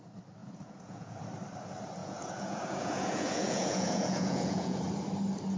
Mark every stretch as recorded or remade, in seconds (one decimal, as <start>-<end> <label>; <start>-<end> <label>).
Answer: 0.0-0.4 recorded; 0.4-1.2 remade; 1.2-2.0 recorded; 2.0-4.8 remade; 4.8-5.6 recorded